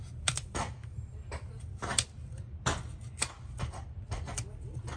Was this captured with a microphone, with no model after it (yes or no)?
yes